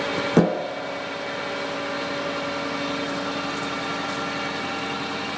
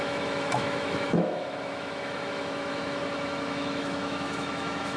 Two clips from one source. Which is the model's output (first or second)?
second